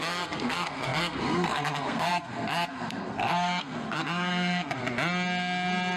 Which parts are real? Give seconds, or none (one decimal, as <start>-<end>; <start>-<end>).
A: 4.8-6.0